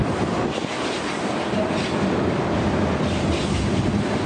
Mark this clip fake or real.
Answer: fake